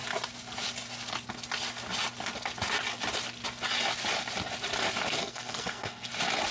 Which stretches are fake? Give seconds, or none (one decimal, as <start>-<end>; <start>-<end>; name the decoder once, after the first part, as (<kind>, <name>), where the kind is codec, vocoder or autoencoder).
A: 5.2-6.1 (codec, SNAC)